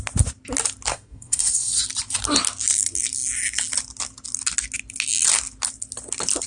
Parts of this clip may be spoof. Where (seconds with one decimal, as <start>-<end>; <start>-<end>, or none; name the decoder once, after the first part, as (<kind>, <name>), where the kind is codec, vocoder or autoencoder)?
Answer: 0.9-1.8 (codec, SNAC)